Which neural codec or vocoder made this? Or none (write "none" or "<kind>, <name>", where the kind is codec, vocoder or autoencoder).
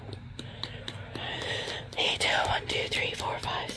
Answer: none